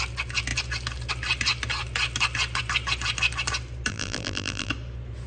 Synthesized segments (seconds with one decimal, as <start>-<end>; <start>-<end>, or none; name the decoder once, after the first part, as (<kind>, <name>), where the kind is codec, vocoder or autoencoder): 3.9-4.7 (vocoder, BigVGAN v2)